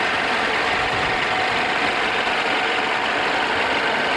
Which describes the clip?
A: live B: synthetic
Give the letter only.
A